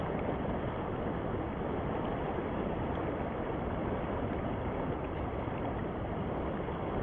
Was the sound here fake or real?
real